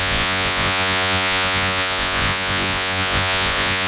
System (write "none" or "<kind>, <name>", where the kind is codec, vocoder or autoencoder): vocoder, Vocos